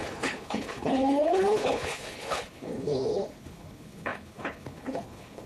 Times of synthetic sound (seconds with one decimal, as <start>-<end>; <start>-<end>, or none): 0.0-5.5